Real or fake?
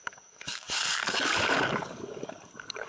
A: fake